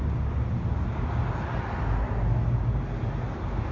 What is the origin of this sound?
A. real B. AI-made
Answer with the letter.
A